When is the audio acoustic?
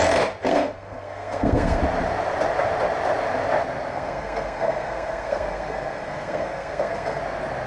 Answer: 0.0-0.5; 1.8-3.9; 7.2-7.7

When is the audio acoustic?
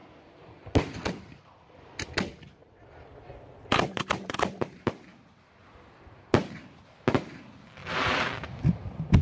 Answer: 0.0-9.2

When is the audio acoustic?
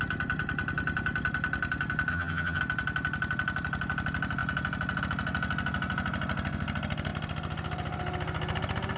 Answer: 0.0-2.1; 2.6-9.0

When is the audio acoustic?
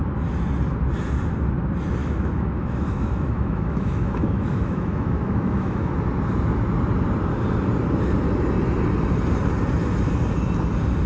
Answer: 0.0-2.0; 5.9-11.1